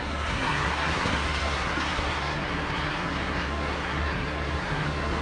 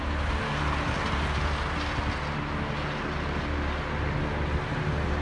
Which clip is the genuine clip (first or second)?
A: second